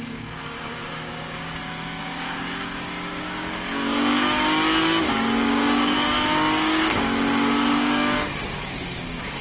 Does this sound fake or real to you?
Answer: fake